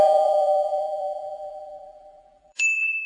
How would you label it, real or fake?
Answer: fake